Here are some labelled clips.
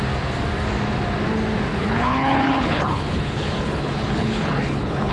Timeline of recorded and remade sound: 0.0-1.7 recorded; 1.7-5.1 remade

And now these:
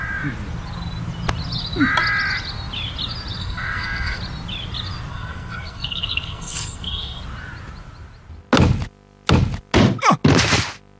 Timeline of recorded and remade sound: 0.0-3.4 recorded; 3.4-4.2 remade; 4.2-5.1 recorded; 5.1-7.2 remade; 7.2-11.0 recorded

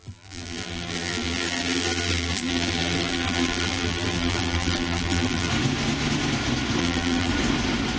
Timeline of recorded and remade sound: 0.0-5.5 remade; 5.5-6.8 recorded; 6.8-7.3 remade; 7.3-8.0 recorded

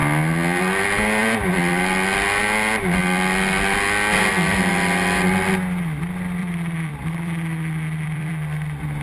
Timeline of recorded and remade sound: 0.0-6.4 recorded; 6.4-8.3 remade; 8.3-9.0 recorded

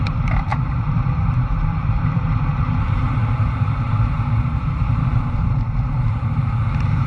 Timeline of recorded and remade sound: 0.0-7.1 remade

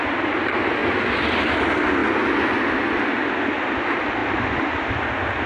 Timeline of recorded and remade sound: 0.0-5.5 recorded

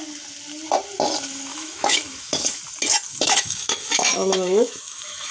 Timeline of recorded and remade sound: 0.0-1.5 recorded; 1.5-2.6 remade; 2.6-3.1 recorded; 3.1-5.3 remade